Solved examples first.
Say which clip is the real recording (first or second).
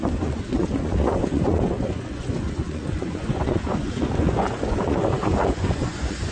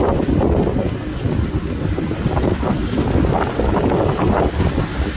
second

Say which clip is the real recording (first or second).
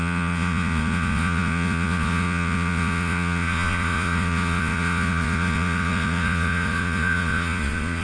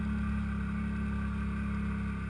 second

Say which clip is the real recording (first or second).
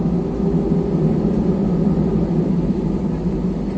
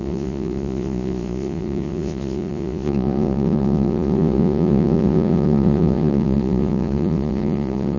first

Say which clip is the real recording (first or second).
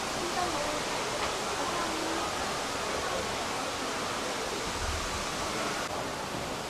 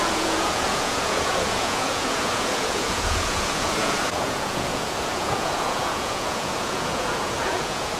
first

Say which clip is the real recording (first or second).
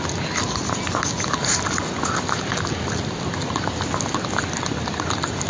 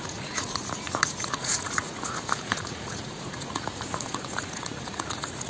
first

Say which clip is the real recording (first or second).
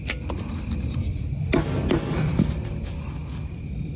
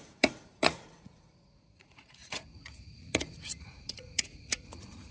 first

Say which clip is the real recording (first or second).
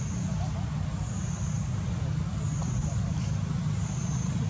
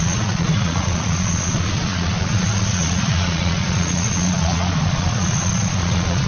first